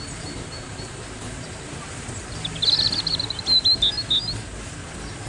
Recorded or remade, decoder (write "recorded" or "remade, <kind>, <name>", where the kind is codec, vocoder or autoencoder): recorded